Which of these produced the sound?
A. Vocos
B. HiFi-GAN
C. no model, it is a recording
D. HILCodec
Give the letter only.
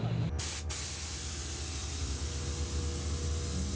C